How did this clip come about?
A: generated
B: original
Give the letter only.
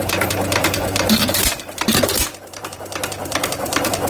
A